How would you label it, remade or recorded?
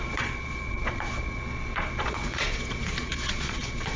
remade